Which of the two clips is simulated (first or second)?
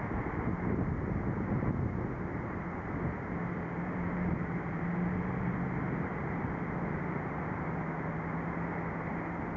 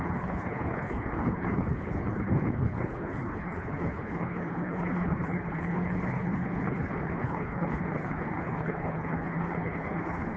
second